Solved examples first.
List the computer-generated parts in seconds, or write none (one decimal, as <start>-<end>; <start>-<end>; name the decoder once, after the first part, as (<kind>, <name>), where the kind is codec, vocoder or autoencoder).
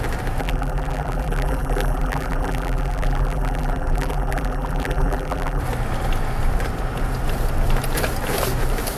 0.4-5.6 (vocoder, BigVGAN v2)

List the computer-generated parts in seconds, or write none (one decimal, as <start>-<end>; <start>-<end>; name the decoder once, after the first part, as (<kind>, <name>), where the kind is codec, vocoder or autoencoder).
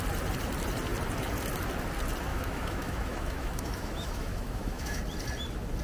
2.3-5.0 (autoencoder, DAC-VAE)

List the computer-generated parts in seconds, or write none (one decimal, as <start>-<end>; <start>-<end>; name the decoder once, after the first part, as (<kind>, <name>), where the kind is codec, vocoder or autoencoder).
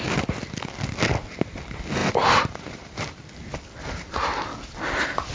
2.0-3.2 (vocoder, BigVGAN v2)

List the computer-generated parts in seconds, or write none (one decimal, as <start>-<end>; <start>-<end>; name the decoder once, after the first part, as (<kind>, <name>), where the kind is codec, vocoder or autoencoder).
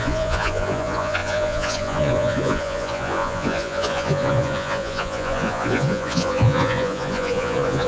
0.0-7.9 (vocoder, Vocos)